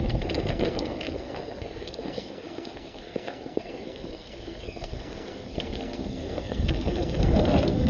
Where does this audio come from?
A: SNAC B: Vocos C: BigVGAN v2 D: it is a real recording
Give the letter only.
A